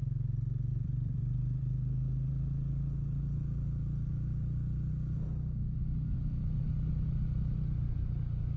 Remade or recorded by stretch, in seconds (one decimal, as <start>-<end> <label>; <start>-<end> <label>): 0.0-0.7 recorded; 0.7-2.3 remade; 2.3-8.6 recorded